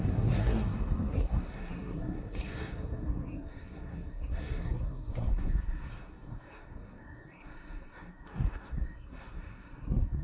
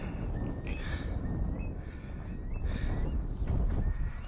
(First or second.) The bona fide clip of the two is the second